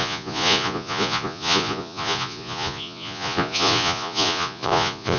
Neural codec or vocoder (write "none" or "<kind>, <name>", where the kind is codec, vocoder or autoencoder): vocoder, Vocos